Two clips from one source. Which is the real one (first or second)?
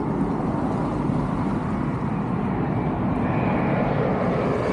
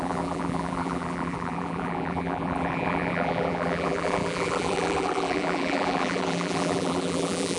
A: first